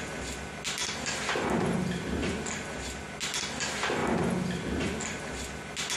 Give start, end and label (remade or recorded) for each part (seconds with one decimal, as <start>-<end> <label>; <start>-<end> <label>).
0.0-0.8 recorded; 0.8-1.8 remade; 1.8-6.0 recorded